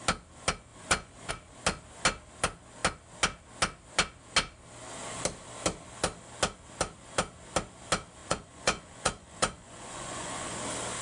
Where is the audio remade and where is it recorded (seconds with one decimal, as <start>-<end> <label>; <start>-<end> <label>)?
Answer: 0.0-0.7 recorded; 0.7-1.3 remade; 1.3-8.2 recorded; 8.2-10.6 remade; 10.6-11.0 recorded